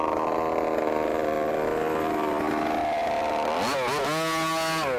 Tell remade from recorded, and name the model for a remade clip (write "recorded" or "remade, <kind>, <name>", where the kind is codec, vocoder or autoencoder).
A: recorded